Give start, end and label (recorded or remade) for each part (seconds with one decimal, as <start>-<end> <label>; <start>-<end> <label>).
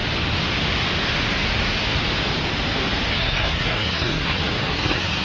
0.0-3.1 recorded; 3.1-5.2 remade